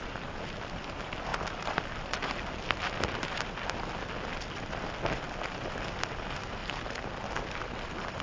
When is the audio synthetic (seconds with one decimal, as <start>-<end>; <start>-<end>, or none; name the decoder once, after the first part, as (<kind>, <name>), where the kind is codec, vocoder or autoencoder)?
none